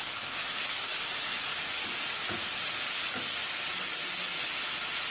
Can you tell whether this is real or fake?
real